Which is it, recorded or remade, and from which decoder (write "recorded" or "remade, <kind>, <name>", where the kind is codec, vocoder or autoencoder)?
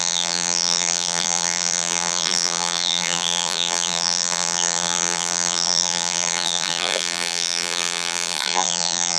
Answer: remade, vocoder, BigVGAN v2